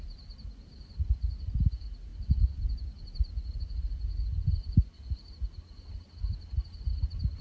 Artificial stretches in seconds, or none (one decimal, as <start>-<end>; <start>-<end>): none

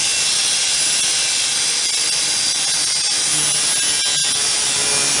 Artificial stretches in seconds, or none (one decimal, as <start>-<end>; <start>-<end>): none

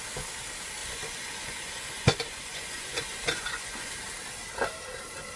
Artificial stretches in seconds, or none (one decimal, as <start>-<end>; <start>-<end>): 0.8-3.9

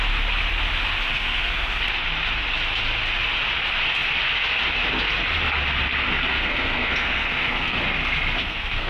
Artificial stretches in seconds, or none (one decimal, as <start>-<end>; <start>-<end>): 1.1-1.8; 6.3-7.8; 8.4-8.9

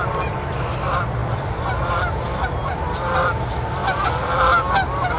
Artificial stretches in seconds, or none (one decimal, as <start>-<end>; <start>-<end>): none

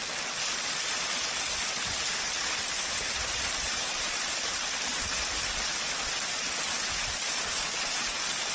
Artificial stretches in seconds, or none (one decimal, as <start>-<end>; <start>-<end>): none